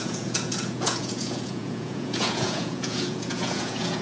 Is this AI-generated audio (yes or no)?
yes